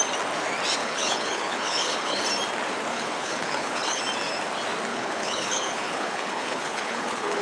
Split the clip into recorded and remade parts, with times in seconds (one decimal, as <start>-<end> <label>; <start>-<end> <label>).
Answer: 0.0-0.8 recorded; 0.8-2.2 remade; 2.2-2.9 recorded; 2.9-4.0 remade; 4.0-4.9 recorded; 4.9-7.4 remade